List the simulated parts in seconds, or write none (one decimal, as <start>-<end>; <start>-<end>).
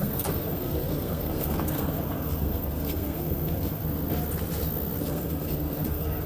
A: 0.0-3.8; 5.0-6.3